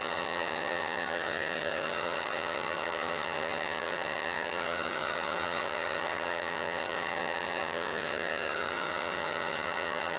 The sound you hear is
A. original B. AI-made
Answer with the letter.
B